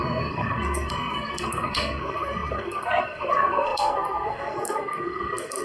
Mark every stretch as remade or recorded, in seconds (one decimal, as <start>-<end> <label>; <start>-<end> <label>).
0.0-5.6 remade